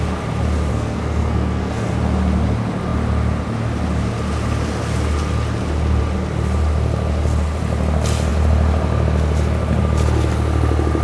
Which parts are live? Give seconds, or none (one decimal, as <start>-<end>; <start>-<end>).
0.0-0.7; 1.9-11.0

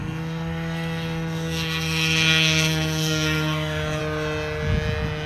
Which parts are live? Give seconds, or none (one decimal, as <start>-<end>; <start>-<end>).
4.0-5.3